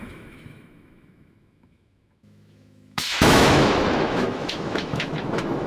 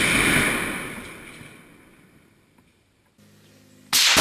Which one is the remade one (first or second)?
first